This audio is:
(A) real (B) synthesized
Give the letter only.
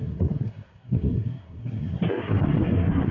B